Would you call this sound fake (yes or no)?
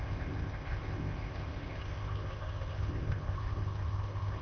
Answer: yes